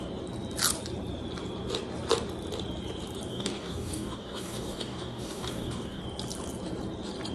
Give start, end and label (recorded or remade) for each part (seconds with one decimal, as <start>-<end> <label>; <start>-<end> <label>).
0.0-3.3 recorded; 3.3-6.0 remade; 6.0-7.3 recorded